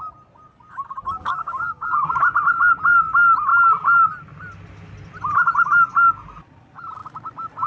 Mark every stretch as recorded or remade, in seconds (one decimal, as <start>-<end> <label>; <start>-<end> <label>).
0.0-1.2 recorded; 1.2-2.1 remade; 2.1-7.7 recorded